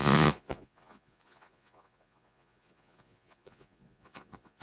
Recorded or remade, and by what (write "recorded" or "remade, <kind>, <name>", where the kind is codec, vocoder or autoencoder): remade, vocoder, Vocos